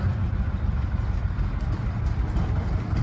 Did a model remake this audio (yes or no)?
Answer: no